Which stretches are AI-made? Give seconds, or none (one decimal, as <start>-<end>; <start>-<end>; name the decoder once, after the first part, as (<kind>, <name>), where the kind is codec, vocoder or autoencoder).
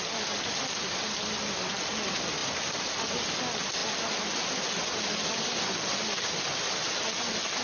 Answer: none